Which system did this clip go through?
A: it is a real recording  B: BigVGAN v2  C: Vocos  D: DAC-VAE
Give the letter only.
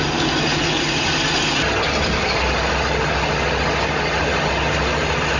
A